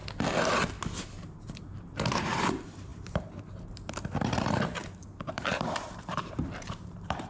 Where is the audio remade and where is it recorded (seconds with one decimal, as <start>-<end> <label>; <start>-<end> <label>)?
0.0-1.6 recorded; 1.6-7.3 remade